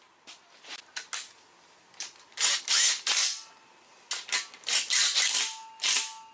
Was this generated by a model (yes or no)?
no